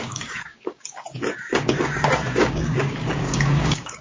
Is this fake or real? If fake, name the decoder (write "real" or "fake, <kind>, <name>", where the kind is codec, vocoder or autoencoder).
fake, codec, DAC